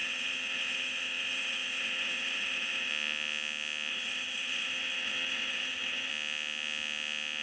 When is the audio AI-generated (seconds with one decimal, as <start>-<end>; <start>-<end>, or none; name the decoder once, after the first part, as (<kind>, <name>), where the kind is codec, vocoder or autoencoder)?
0.0-2.9 (vocoder, HiFi-GAN); 3.9-6.1